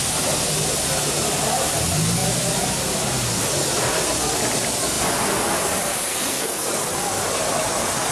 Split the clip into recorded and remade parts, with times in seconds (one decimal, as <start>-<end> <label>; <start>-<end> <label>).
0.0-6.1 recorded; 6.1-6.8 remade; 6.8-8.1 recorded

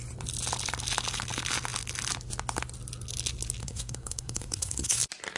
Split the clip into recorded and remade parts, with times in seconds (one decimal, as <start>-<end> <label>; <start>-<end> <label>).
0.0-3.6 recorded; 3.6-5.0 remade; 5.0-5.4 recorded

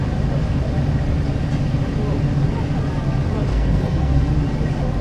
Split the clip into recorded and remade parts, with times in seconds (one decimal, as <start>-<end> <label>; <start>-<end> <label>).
0.0-3.5 recorded; 3.5-4.3 remade; 4.3-5.0 recorded

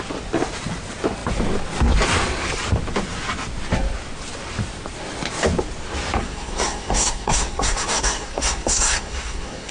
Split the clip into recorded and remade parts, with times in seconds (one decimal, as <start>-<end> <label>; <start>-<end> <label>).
0.0-6.2 recorded; 6.2-9.7 remade

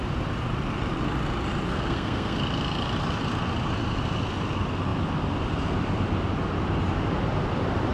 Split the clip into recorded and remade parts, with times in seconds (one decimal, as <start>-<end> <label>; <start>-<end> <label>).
0.0-1.7 recorded; 1.7-2.4 remade; 2.4-7.9 recorded

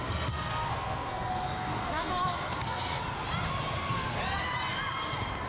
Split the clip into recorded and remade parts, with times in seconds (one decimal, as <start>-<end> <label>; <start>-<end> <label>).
0.0-3.0 remade; 3.0-3.7 recorded; 3.7-4.2 remade; 4.2-5.5 recorded